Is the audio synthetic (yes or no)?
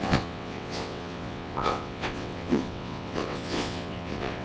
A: yes